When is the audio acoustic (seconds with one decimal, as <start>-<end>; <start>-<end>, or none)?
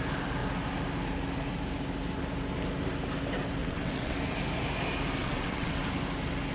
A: 0.0-3.6; 4.2-5.2; 5.8-6.5